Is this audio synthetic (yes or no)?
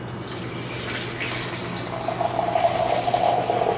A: no